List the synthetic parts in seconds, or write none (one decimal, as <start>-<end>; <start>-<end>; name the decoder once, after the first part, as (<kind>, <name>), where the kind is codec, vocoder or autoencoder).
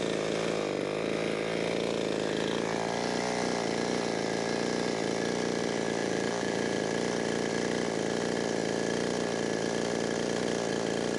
6.0-6.8 (vocoder, BigVGAN v2)